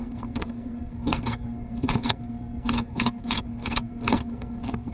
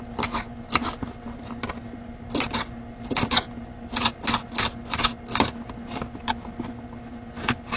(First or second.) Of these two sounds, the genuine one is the second